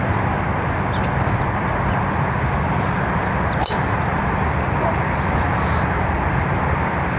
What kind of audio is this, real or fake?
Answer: fake